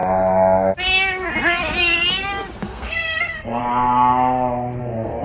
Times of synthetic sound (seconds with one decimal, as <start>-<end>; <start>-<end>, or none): 2.6-3.6; 4.8-5.2